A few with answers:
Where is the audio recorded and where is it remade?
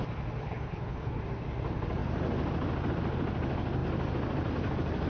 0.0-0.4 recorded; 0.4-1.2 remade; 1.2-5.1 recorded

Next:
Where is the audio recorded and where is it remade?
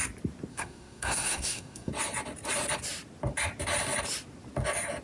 0.0-0.5 recorded; 0.5-1.9 remade; 1.9-5.0 recorded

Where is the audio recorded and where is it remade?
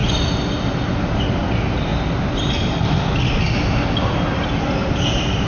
0.0-5.5 recorded